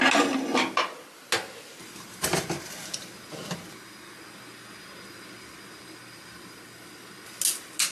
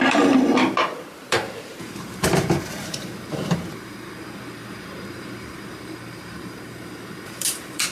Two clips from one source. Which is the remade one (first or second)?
second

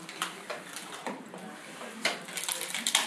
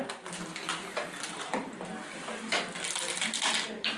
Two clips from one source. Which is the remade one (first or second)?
first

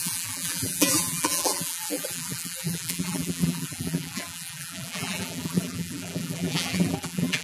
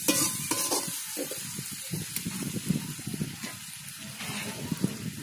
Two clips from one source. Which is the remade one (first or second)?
first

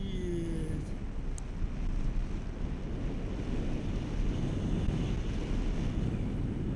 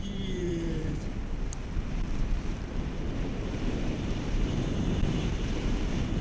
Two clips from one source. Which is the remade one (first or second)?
second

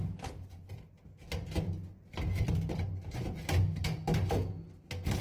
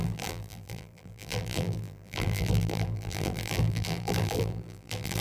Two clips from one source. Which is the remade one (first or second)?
second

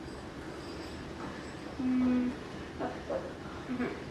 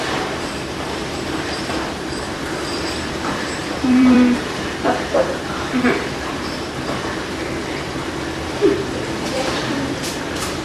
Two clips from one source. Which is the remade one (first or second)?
second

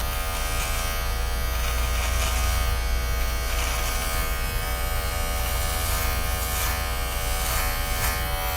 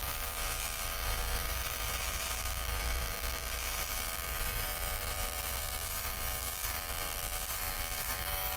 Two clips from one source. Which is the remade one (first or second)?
second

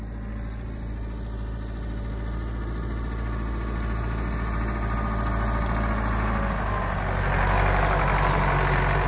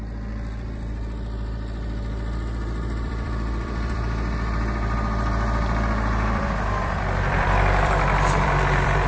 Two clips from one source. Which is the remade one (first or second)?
second